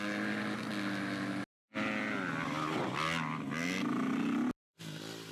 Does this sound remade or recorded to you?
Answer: recorded